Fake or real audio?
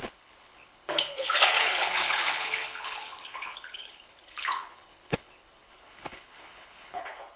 fake